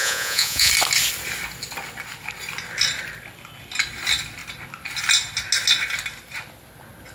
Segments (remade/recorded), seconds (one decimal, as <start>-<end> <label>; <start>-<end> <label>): 0.0-0.7 remade; 0.7-7.1 recorded